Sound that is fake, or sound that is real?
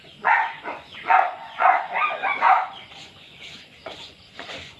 fake